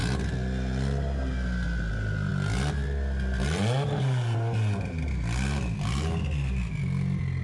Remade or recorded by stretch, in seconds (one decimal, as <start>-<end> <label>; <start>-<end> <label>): 0.0-7.4 recorded